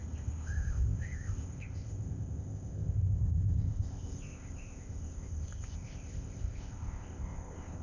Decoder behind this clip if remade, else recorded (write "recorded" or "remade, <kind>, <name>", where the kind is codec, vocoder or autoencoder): remade, codec, ZipCodec